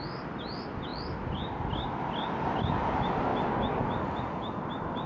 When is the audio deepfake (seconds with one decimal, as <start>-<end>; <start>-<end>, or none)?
none